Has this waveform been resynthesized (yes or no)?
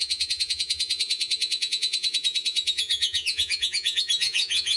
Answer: yes